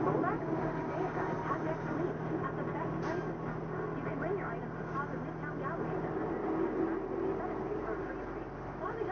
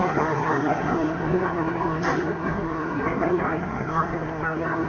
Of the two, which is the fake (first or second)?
second